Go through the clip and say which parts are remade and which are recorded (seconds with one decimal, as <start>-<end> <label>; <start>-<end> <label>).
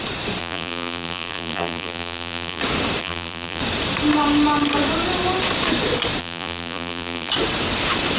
0.0-0.4 recorded; 0.4-2.6 remade; 2.6-3.0 recorded; 3.0-3.6 remade; 3.6-6.2 recorded; 6.2-7.3 remade; 7.3-8.2 recorded